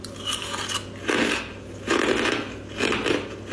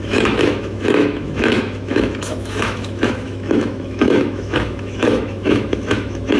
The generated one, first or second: second